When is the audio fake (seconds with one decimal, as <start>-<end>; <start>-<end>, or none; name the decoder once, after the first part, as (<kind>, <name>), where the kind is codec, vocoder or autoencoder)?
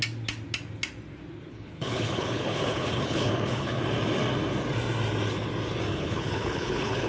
1.5-3.8 (codec, HILCodec); 5.9-7.1